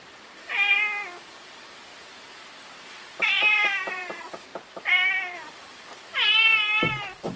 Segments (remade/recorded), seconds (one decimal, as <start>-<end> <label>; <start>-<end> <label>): 0.0-0.4 remade; 0.4-1.4 recorded; 1.4-7.4 remade